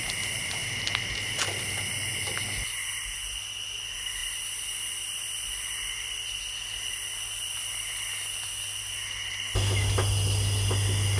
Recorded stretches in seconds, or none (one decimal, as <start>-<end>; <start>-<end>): 0.0-11.2